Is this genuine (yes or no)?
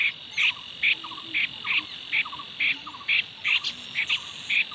yes